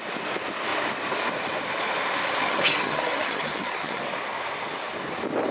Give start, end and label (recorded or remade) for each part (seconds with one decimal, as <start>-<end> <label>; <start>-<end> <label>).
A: 0.0-2.4 recorded; 2.4-4.0 remade; 4.0-5.5 recorded